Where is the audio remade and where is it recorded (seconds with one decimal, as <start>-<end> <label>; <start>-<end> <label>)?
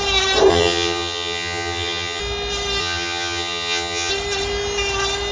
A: 0.0-0.5 recorded; 0.5-2.2 remade; 2.2-2.8 recorded; 2.8-4.1 remade; 4.1-5.3 recorded